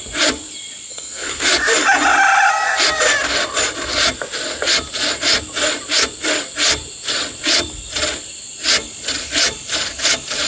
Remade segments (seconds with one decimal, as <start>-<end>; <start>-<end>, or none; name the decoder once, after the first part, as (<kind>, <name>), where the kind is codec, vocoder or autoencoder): 0.9-1.5 (codec, SNAC)